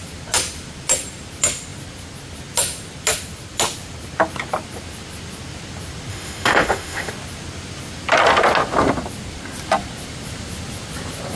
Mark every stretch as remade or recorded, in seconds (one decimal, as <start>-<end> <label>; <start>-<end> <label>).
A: 0.0-6.1 recorded; 6.1-7.1 remade; 7.1-11.4 recorded